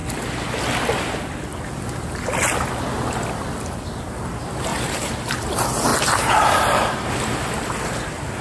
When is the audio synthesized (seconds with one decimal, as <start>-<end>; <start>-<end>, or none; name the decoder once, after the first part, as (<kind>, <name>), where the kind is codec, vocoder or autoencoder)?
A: 4.7-5.4 (vocoder, BigVGAN v2); 5.9-7.1